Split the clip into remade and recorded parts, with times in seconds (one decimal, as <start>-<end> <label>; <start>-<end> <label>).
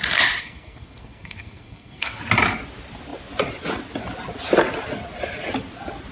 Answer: 0.0-0.4 recorded; 0.4-2.2 remade; 2.2-6.1 recorded